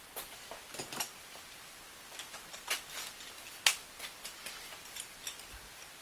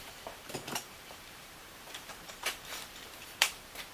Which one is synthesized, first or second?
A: second